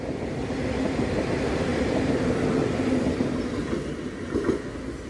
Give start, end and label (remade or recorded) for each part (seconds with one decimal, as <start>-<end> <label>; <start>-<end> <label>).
0.0-5.1 recorded